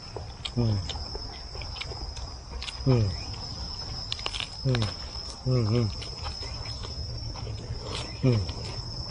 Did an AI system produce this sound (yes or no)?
no